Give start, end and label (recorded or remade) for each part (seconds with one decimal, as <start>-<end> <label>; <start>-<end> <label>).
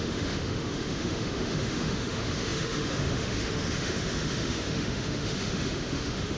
0.0-6.4 remade